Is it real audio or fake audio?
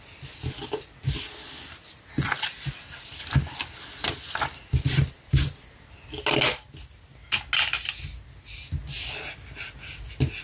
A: real